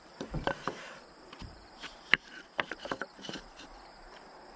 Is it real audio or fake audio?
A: fake